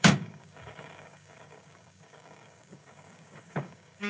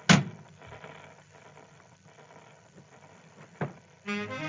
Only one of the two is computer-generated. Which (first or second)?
first